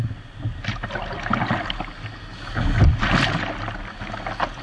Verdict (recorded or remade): recorded